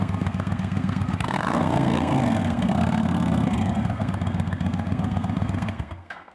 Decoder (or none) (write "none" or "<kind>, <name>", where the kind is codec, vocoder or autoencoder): codec, SNAC